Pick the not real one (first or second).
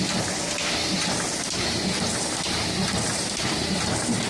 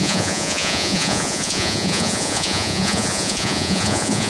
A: second